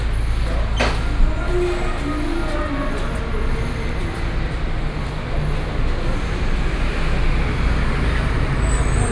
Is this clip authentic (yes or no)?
yes